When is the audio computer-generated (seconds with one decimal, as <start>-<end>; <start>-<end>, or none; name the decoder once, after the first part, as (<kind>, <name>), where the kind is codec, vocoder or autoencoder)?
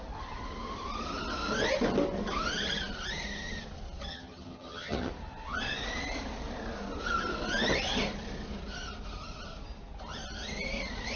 4.1-5.1 (vocoder, HiFi-GAN)